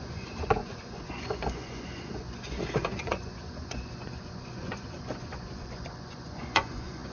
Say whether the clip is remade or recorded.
remade